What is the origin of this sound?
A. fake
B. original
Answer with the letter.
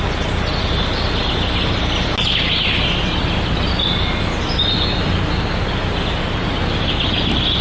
B